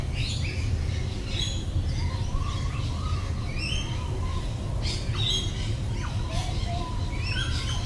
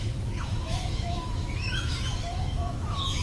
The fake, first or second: second